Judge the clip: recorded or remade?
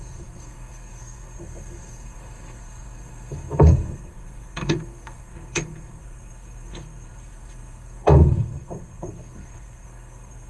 remade